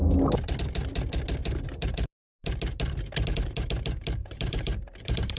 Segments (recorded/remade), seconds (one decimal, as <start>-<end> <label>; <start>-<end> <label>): 0.0-1.4 recorded; 1.4-2.2 remade; 2.2-4.2 recorded; 4.2-5.4 remade